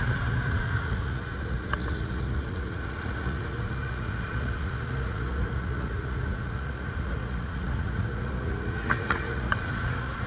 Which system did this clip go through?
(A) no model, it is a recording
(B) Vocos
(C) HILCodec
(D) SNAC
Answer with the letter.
B